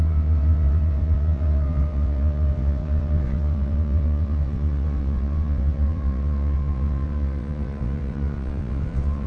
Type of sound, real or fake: fake